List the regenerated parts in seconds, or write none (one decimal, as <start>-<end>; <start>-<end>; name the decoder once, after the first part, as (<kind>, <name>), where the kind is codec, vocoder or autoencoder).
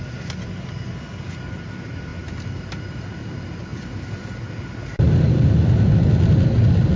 none